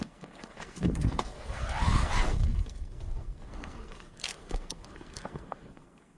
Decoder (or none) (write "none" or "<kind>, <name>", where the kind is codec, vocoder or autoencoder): codec, SNAC